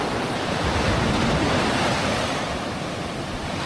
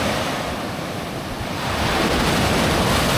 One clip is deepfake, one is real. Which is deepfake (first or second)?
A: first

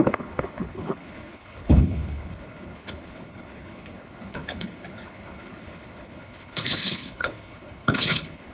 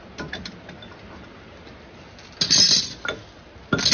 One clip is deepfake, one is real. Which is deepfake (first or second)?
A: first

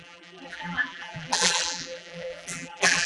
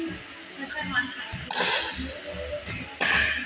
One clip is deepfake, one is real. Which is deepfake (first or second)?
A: first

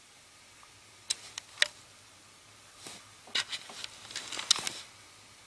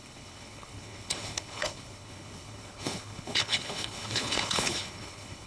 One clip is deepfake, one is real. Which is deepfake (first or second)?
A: second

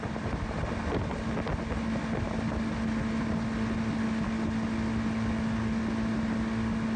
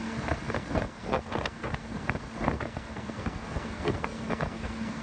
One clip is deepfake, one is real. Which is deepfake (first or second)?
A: second